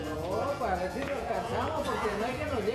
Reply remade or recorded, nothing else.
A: remade